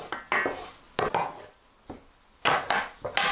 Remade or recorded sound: recorded